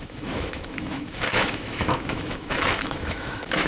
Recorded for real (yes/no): no